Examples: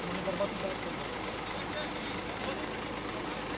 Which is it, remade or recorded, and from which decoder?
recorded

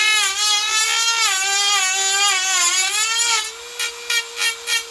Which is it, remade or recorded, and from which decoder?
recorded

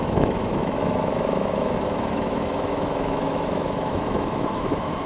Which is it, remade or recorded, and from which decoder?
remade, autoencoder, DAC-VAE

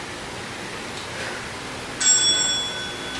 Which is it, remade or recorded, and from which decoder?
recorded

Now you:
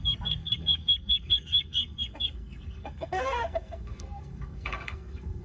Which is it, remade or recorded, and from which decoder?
remade, codec, SNAC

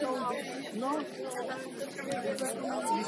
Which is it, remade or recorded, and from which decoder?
recorded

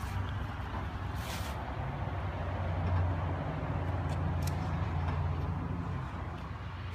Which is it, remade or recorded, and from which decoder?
recorded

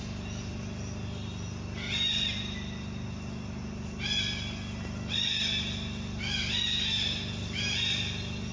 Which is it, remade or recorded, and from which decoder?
recorded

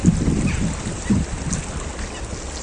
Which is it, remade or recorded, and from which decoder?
recorded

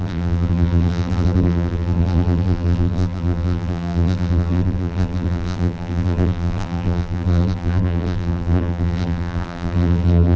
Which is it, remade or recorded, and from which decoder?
remade, vocoder, BigVGAN v2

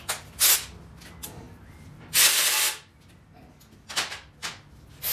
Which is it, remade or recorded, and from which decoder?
recorded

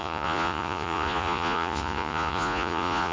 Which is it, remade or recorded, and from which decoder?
remade, vocoder, Vocos